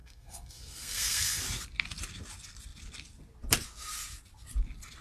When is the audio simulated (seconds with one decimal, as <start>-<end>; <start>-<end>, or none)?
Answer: 0.0-1.4